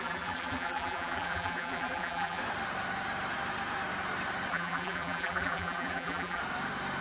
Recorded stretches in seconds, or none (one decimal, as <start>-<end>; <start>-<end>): 2.4-4.5; 6.4-7.0